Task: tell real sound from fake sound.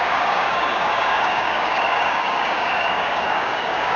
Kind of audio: fake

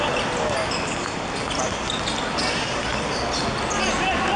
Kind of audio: real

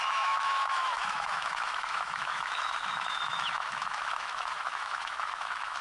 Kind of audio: fake